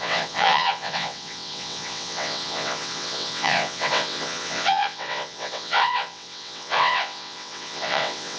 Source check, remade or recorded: remade